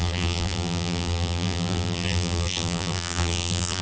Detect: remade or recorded remade